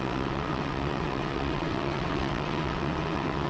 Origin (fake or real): fake